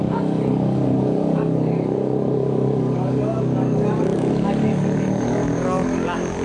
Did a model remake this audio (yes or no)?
yes